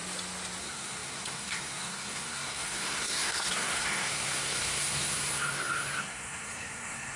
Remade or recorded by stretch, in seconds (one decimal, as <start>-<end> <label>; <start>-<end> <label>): 0.0-0.6 recorded; 0.6-7.2 remade